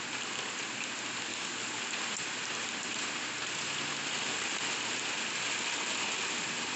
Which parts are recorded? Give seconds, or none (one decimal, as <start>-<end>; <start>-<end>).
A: 0.0-1.3; 1.8-6.8